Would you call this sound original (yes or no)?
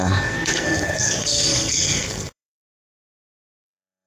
no